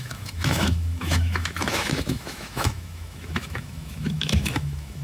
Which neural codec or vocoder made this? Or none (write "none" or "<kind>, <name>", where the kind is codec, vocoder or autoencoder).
autoencoder, DAC-VAE